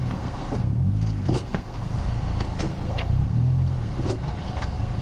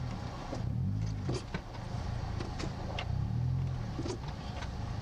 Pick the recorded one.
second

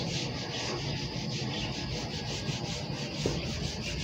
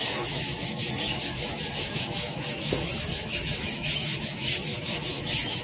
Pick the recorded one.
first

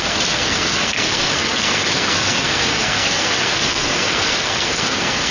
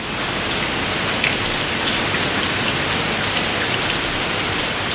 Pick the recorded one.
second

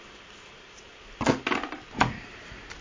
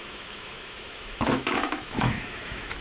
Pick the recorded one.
first